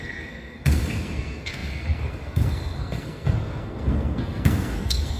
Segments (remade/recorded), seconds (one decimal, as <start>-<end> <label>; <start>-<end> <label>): 0.0-5.2 remade